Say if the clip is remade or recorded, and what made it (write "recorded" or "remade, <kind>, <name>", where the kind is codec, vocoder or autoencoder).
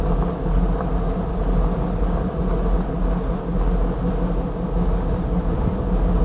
recorded